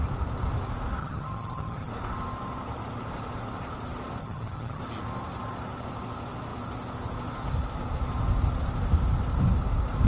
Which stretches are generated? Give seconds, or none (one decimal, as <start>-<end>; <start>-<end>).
1.0-1.9; 4.2-4.8